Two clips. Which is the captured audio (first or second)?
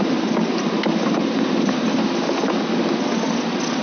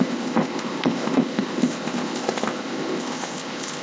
first